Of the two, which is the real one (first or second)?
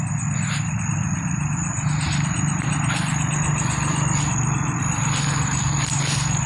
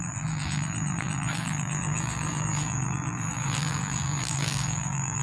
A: first